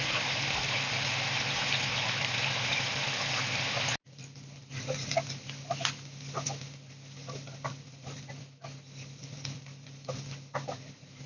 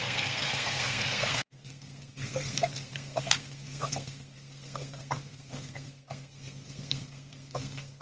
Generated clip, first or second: second